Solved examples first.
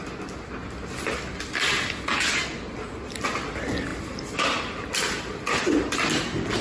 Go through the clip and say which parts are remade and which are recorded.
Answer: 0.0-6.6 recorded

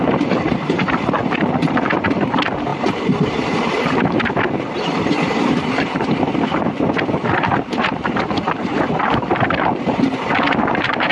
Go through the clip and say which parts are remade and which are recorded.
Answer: 0.0-11.1 remade

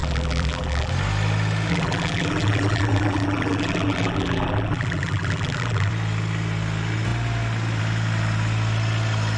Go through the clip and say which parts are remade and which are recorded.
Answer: 0.0-0.9 remade; 0.9-1.7 recorded; 1.7-5.9 remade; 5.9-9.4 recorded